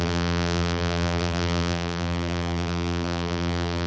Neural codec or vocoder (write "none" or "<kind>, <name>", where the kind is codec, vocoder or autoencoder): vocoder, BigVGAN v2